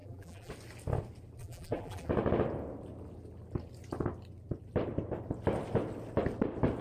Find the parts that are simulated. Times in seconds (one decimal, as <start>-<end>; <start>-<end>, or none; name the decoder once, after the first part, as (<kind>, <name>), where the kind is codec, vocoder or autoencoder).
0.0-0.5 (vocoder, BigVGAN v2); 1.4-2.1